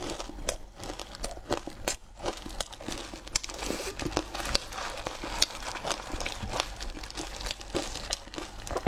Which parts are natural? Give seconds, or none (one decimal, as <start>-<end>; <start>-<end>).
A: 0.0-8.9